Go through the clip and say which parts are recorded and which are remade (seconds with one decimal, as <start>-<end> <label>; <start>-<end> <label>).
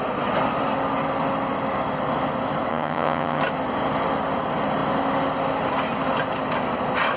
0.0-2.7 recorded; 2.7-3.4 remade; 3.4-7.2 recorded